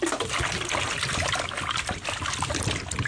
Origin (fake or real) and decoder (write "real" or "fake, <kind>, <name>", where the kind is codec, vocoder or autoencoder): real